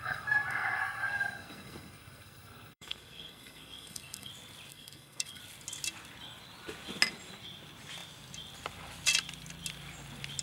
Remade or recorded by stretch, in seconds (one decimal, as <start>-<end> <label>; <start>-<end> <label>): 0.0-4.3 remade; 4.3-4.7 recorded; 4.7-5.4 remade; 5.4-10.4 recorded